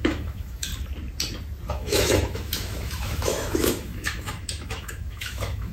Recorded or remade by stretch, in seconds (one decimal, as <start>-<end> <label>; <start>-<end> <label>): 0.0-0.7 remade; 0.7-1.7 recorded; 1.7-5.7 remade